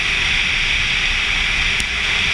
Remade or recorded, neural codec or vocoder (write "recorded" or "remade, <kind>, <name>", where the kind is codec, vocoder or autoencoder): recorded